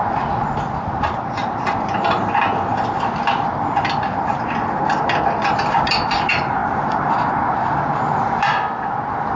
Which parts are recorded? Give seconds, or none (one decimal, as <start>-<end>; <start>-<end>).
0.0-9.4